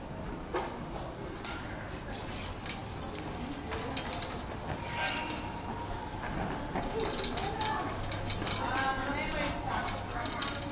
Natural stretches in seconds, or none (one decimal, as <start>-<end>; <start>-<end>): 0.0-10.7